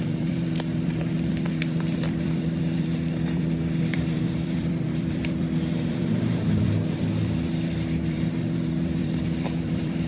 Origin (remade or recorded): remade